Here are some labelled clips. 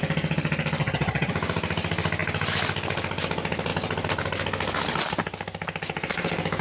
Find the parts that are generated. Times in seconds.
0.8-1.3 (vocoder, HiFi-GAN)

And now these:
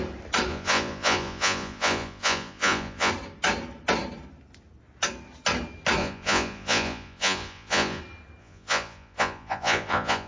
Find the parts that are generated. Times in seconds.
0.5-3.1 (vocoder, Vocos); 6.0-8.0; 8.4-10.3